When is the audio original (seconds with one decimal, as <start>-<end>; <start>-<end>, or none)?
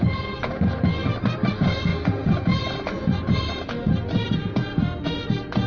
0.9-1.5